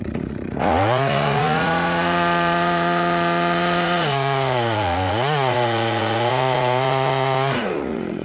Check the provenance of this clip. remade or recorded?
remade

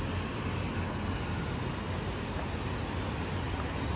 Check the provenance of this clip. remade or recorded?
recorded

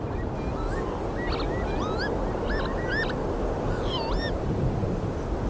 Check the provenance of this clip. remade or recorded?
recorded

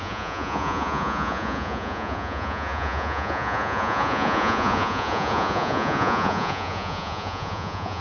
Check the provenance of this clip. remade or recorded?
remade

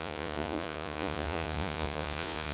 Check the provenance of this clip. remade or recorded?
remade